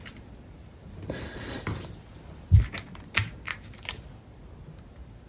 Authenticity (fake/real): real